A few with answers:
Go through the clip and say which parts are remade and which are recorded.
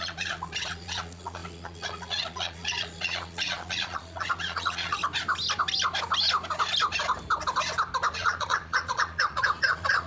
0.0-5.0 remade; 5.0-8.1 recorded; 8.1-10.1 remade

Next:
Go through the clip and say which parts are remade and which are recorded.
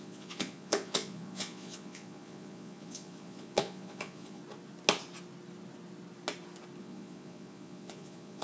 0.0-4.4 remade; 4.4-6.8 recorded; 6.8-8.4 remade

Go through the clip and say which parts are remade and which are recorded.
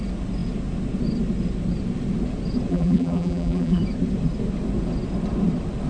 0.0-2.7 recorded; 2.7-3.8 remade; 3.8-5.9 recorded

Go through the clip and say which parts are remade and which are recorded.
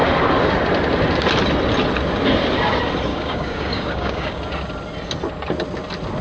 0.0-3.1 recorded; 3.1-4.4 remade; 4.4-6.2 recorded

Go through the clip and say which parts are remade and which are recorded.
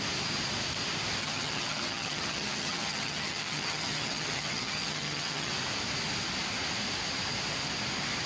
0.0-1.2 recorded; 1.2-5.5 remade; 5.5-8.3 recorded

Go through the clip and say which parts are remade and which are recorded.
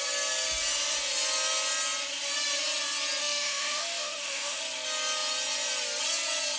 0.0-3.2 recorded; 3.2-4.6 remade; 4.6-6.6 recorded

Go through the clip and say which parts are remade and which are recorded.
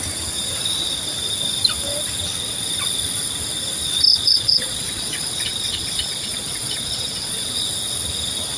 0.0-4.1 recorded; 4.1-7.7 remade; 7.7-8.6 recorded